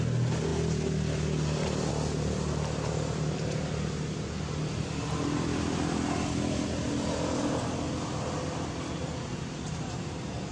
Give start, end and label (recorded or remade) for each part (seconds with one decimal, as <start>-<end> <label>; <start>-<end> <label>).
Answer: 0.0-10.5 recorded